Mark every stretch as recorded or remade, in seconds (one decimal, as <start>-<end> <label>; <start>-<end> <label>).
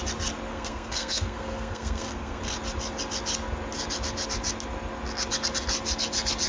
0.0-0.5 recorded; 0.5-2.4 remade; 2.4-6.5 recorded